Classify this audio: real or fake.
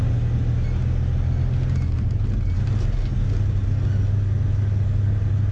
real